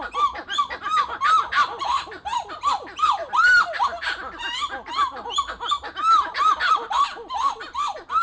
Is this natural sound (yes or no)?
yes